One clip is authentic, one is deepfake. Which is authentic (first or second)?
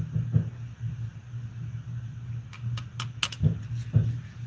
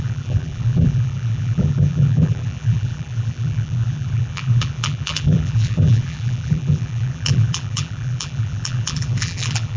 first